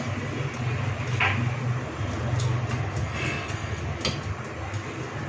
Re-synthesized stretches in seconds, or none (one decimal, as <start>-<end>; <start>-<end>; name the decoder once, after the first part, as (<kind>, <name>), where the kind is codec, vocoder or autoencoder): 3.0-3.8 (codec, SNAC)